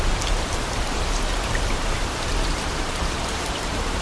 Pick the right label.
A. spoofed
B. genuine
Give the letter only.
B